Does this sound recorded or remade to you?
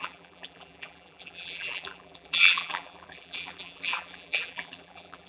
remade